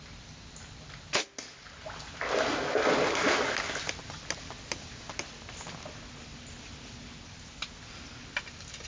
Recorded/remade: recorded